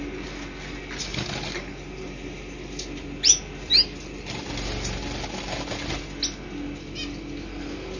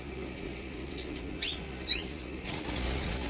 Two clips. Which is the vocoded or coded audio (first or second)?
second